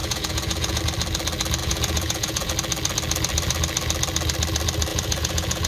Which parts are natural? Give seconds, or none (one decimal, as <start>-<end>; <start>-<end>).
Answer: 0.8-1.6; 2.5-4.9